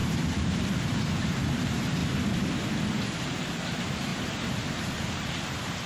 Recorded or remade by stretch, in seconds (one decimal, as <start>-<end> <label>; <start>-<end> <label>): 0.0-2.0 remade; 2.0-3.2 recorded; 3.2-4.1 remade; 4.1-5.1 recorded; 5.1-5.9 remade